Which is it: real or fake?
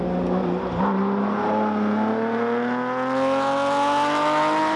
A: real